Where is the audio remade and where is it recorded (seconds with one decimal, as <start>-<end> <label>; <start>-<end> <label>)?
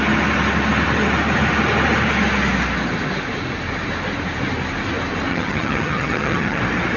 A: 0.0-5.3 recorded; 5.3-6.6 remade; 6.6-7.0 recorded